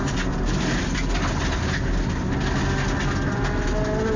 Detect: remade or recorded recorded